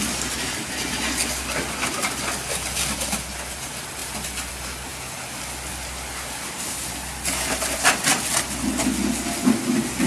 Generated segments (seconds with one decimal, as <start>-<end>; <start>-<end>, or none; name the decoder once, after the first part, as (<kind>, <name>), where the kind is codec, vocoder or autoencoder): 4.9-5.7 (vocoder, BigVGAN v2)